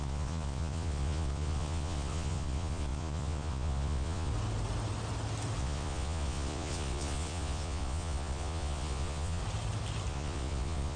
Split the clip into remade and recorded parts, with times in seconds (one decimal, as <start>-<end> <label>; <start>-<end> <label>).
0.0-4.3 remade; 4.3-5.6 recorded; 5.6-9.4 remade; 9.4-10.1 recorded; 10.1-11.0 remade